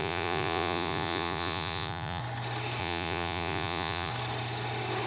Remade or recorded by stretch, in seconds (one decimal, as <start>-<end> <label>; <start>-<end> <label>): 0.0-2.2 remade; 2.2-2.8 recorded; 2.8-4.1 remade; 4.1-5.1 recorded